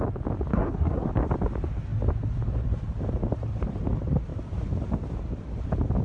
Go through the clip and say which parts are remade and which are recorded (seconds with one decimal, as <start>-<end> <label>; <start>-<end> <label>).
0.0-0.5 recorded; 0.5-1.1 remade; 1.1-6.0 recorded